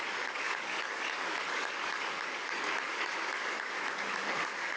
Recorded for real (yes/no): no